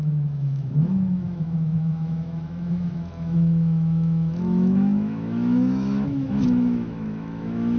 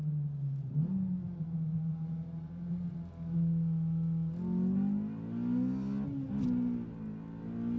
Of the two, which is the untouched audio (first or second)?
second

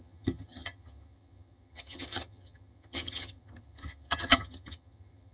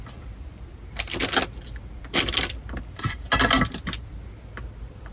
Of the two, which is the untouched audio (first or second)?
second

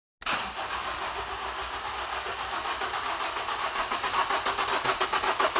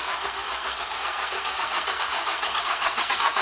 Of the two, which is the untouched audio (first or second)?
first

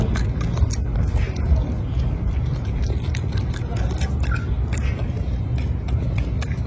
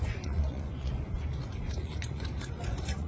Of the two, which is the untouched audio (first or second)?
first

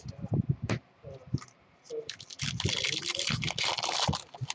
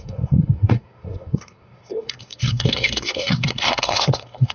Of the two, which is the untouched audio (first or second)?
first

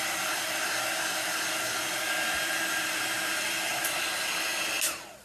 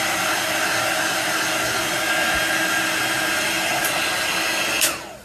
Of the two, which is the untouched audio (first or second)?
second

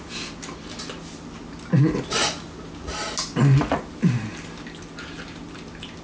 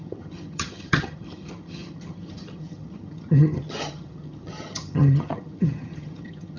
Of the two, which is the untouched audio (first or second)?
first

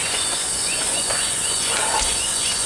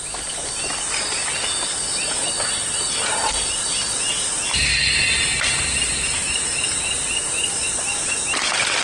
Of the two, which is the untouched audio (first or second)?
second